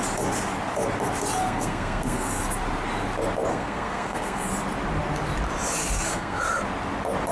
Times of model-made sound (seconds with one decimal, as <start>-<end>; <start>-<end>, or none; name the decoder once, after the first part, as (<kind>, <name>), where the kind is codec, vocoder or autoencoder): 1.4-2.4 (codec, SNAC); 3.5-4.5; 5.8-6.4

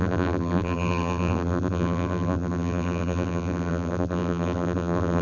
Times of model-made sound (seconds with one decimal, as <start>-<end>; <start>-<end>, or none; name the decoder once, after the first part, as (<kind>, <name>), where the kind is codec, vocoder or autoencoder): 0.0-5.2 (vocoder, BigVGAN v2)

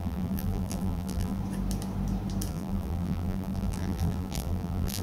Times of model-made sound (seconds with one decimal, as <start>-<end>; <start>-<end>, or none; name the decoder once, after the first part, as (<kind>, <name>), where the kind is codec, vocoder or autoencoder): 0.0-1.4 (vocoder, BigVGAN v2); 2.5-5.0

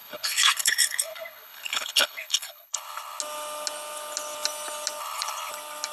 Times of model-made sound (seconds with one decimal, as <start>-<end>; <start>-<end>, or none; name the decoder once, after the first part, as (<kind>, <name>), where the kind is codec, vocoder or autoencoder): 0.0-3.2 (codec, HILCodec); 5.0-5.5

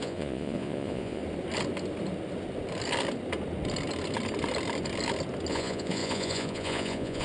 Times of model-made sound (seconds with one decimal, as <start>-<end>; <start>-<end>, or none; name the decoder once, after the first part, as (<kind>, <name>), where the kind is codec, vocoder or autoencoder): 0.0-1.2 (vocoder, Vocos); 5.5-7.2

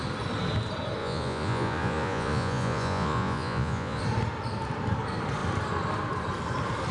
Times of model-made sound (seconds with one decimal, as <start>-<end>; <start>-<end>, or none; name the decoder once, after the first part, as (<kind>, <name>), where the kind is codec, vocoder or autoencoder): 1.0-4.0 (vocoder, Vocos)

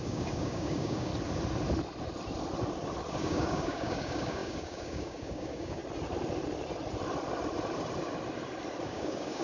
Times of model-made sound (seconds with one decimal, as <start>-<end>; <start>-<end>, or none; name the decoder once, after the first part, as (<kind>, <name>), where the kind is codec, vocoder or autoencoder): 0.0-1.1 (codec, DAC); 3.1-5.8; 8.8-9.4